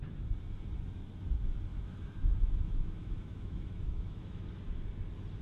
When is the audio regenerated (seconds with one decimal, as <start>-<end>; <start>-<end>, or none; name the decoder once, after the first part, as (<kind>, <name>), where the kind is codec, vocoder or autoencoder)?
1.7-4.4 (autoencoder, DAC-VAE)